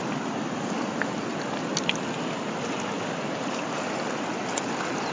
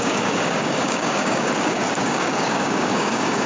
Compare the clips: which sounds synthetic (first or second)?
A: second